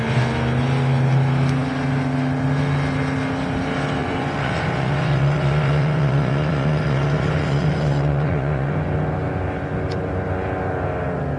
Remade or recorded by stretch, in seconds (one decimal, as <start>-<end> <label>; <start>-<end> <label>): 0.0-4.0 recorded; 4.0-8.7 remade; 8.7-11.4 recorded